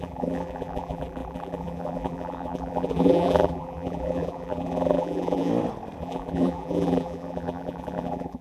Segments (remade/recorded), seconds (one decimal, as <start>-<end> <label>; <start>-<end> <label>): 0.0-5.5 remade; 5.5-6.0 recorded; 6.0-8.4 remade

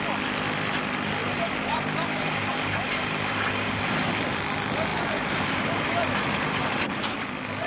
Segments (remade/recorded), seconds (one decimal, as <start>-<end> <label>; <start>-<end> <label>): 0.0-1.2 recorded; 1.2-4.1 remade; 4.1-4.9 recorded; 4.9-7.0 remade; 7.0-7.7 recorded

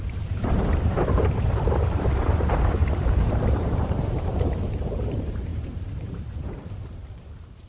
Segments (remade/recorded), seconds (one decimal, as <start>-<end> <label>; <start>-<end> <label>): 0.0-7.7 remade

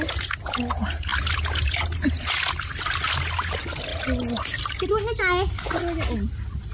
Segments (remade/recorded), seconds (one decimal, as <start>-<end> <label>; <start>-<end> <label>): 0.0-6.7 recorded